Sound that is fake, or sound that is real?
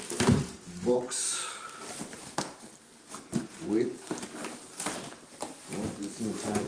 fake